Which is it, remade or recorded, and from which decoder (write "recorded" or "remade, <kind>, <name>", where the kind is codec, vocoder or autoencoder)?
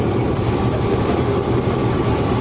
recorded